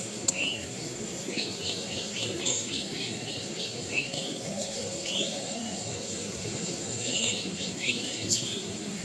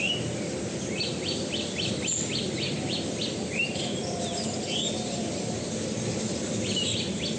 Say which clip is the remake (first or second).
first